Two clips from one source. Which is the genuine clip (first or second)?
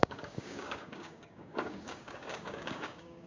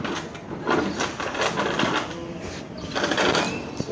second